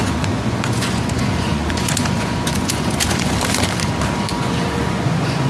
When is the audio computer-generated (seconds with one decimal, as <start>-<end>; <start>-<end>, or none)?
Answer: 0.0-3.3; 4.3-5.5